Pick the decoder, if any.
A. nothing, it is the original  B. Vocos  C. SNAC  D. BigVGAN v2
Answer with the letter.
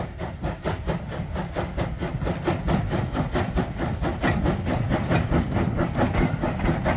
A